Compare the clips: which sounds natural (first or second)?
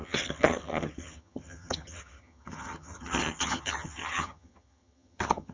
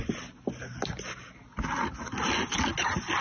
second